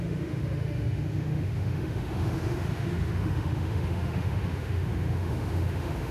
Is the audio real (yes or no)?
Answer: no